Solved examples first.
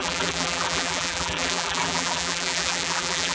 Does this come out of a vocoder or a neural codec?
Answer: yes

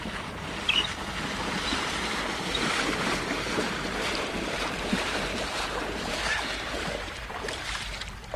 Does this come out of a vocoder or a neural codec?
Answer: yes